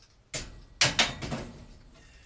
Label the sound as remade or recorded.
recorded